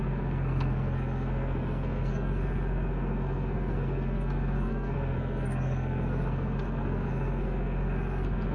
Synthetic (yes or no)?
yes